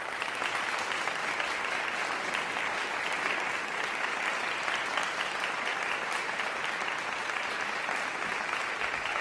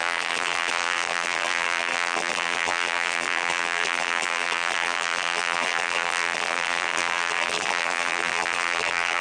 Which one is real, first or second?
first